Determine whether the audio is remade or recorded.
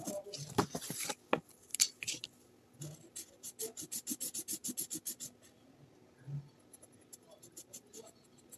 recorded